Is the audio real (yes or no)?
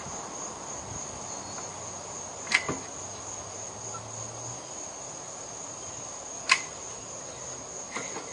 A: yes